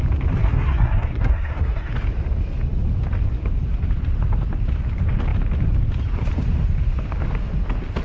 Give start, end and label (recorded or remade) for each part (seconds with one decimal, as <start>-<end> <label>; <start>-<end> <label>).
0.0-0.4 recorded; 0.4-1.9 remade; 1.9-8.0 recorded